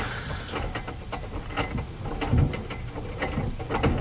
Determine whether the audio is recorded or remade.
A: recorded